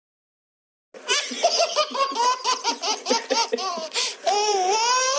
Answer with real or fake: real